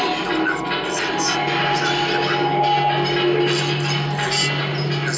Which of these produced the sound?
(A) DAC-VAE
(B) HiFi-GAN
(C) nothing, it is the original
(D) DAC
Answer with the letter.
C